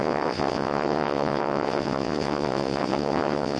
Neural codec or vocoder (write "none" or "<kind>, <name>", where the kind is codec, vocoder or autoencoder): vocoder, WaveNeXt